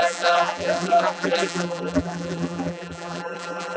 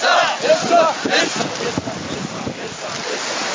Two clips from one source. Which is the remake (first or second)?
first